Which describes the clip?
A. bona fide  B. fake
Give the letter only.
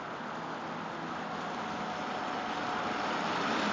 A